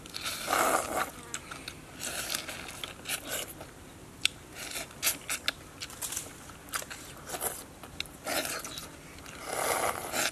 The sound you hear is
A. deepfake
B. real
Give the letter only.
B